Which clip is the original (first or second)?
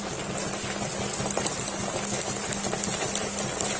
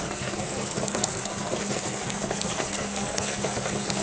first